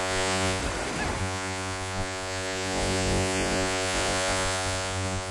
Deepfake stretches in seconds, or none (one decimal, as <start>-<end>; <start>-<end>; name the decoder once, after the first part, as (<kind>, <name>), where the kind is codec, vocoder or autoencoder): 0.0-0.6 (vocoder, Vocos); 1.2-5.3